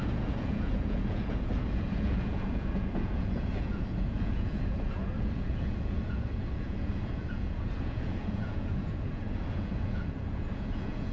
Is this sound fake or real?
fake